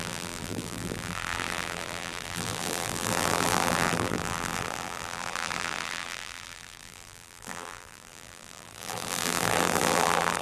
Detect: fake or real fake